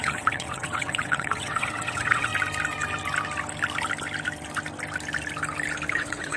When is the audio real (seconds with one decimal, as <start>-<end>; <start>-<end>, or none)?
2.3-5.9